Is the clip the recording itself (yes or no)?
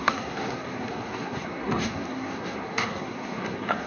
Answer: no